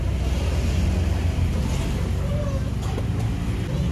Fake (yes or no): no